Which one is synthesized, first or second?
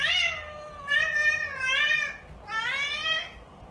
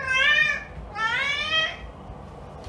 first